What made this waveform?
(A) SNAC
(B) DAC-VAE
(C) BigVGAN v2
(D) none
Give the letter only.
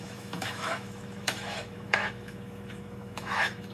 B